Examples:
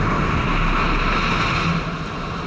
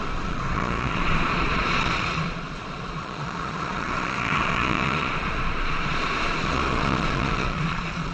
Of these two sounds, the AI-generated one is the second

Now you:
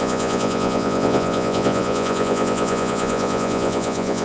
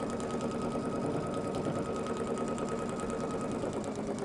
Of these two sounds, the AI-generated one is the first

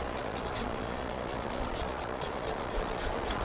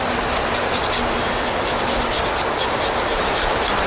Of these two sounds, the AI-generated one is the first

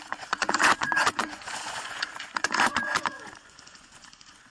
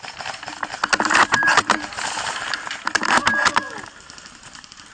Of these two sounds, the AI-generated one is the first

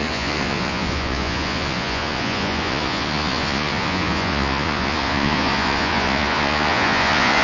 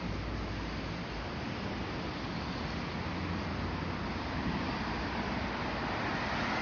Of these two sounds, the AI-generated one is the first